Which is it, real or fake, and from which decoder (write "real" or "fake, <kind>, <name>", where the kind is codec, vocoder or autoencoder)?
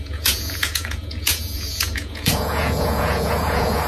fake, vocoder, Vocos